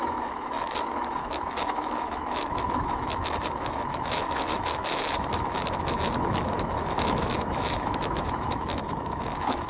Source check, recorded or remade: remade